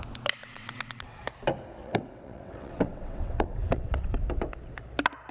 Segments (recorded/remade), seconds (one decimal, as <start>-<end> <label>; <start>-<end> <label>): 0.0-0.4 recorded; 0.4-1.2 remade; 1.2-1.8 recorded; 1.8-4.2 remade; 4.2-5.3 recorded

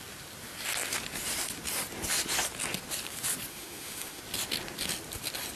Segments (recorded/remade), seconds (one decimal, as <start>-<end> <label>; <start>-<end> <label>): 0.0-3.5 recorded; 3.5-4.2 remade; 4.2-5.6 recorded